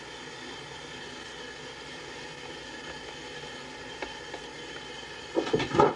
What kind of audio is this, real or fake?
real